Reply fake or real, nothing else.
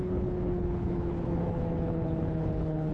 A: fake